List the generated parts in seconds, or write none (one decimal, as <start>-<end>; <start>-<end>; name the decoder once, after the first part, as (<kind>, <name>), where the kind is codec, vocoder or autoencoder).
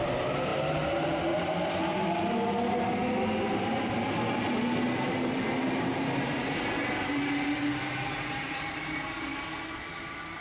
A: none